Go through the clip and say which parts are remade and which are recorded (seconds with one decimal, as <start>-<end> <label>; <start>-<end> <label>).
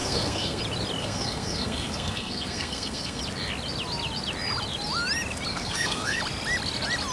0.0-0.6 remade; 0.6-1.0 recorded; 1.0-3.2 remade; 3.2-5.5 recorded; 5.5-6.2 remade; 6.2-7.1 recorded